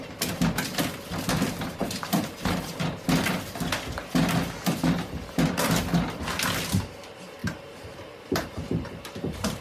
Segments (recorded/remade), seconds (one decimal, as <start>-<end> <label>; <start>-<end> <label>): 0.0-1.8 recorded; 1.8-2.5 remade; 2.5-7.4 recorded; 7.4-9.6 remade